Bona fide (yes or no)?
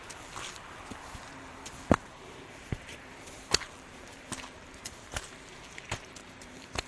no